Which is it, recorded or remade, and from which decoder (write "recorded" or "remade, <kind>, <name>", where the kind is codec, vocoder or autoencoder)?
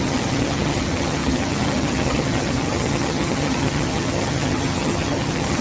remade, vocoder, HiFi-GAN